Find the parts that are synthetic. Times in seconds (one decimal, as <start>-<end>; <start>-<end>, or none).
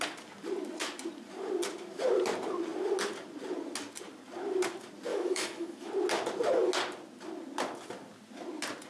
5.1-5.9